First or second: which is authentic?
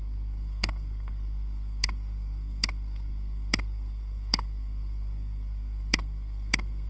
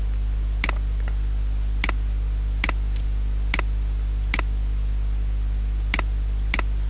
second